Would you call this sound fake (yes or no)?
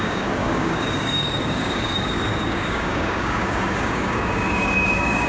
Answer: yes